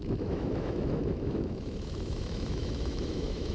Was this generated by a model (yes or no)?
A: yes